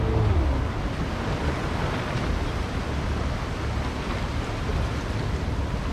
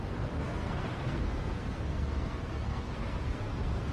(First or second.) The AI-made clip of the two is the second